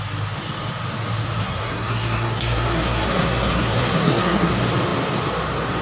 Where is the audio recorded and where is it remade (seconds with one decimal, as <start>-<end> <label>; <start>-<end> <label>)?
0.0-1.4 recorded; 1.4-4.5 remade; 4.5-5.8 recorded